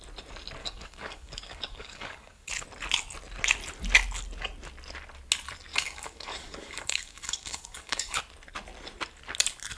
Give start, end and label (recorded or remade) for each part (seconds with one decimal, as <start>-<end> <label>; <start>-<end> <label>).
0.0-0.6 recorded; 0.6-2.5 remade; 2.5-5.7 recorded; 5.7-8.2 remade; 8.2-9.8 recorded